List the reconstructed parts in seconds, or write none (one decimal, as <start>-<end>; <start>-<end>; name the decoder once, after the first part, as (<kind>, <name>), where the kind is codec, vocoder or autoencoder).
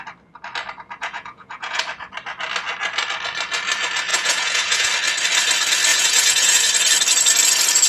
1.0-1.8 (vocoder, Vocos); 4.1-4.9; 5.9-6.6